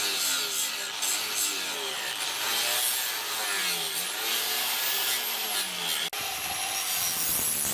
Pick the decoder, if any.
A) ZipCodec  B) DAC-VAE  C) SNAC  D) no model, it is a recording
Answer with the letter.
D